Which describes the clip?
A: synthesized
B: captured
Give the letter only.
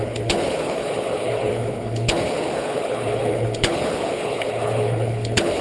A